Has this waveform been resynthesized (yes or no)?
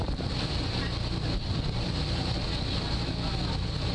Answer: no